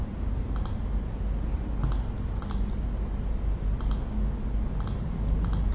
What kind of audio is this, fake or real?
real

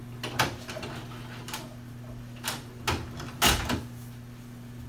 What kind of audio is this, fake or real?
real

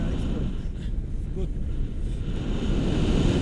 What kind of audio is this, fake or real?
real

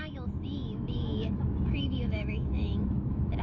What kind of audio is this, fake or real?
fake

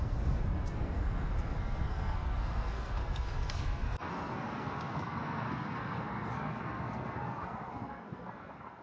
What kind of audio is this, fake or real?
fake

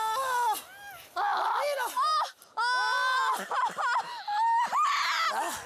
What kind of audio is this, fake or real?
real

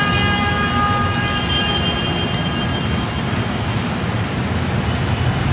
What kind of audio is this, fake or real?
real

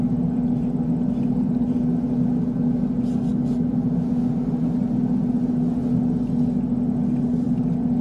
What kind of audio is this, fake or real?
real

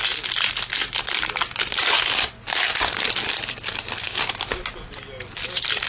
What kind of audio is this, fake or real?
real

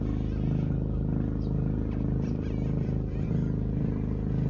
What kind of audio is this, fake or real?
fake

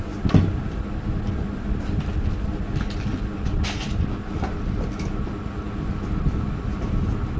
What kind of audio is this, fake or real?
real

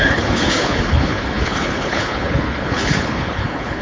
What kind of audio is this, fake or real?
fake